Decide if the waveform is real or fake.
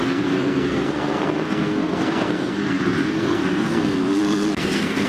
fake